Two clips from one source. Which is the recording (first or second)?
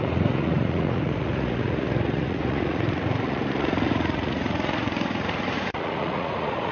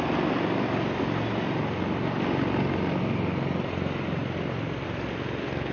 second